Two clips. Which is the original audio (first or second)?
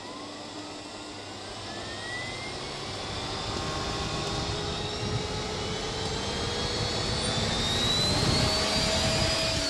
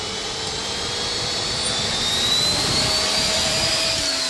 first